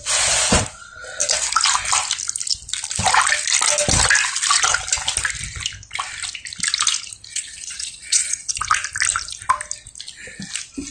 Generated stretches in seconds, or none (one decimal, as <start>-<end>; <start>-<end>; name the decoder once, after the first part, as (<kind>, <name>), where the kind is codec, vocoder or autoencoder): 7.3-8.5 (vocoder, Vocos)